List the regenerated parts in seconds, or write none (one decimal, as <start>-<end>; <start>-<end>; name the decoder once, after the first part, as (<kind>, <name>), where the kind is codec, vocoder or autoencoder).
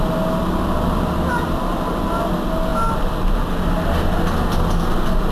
none